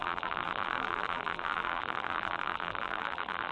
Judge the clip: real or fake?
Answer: fake